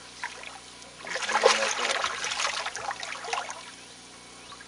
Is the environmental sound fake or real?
real